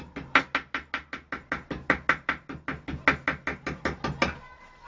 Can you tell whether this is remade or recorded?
recorded